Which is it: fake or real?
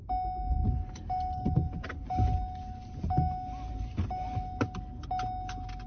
real